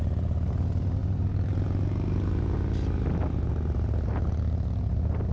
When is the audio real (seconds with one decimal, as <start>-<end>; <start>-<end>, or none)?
0.0-5.3